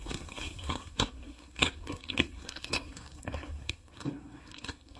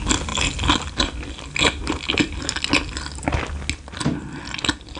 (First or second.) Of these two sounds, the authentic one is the second